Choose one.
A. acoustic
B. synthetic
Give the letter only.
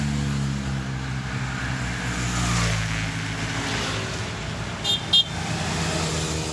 A